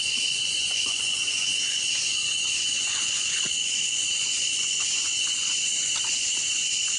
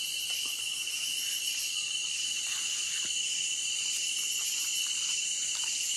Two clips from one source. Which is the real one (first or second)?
second